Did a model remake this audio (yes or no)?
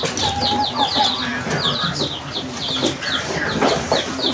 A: no